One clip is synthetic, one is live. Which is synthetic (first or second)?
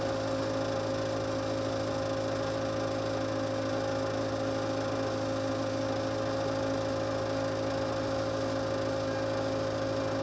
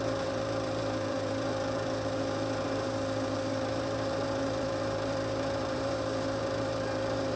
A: second